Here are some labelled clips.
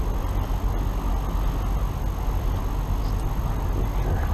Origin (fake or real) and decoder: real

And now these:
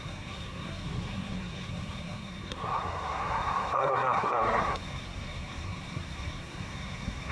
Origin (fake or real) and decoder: fake, codec, SNAC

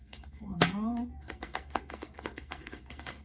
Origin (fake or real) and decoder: fake, codec, SNAC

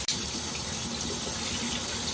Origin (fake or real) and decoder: real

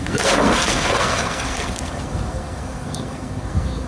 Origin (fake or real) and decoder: fake, codec, SNAC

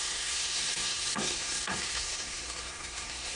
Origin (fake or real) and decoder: fake, codec, SNAC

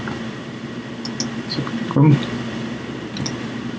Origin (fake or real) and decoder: real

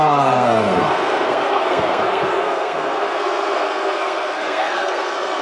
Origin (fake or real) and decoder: fake, codec, SNAC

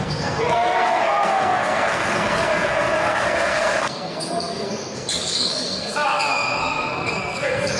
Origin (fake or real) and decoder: fake, codec, SNAC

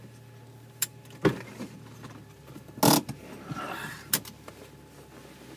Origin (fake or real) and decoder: real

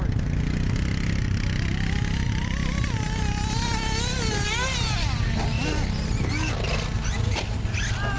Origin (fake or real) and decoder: real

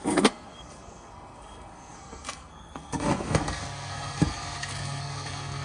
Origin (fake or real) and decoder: fake, codec, SNAC